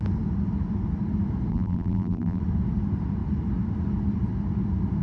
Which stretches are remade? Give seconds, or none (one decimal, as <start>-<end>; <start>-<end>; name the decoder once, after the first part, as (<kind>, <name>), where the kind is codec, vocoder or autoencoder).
1.5-2.4 (vocoder, BigVGAN v2)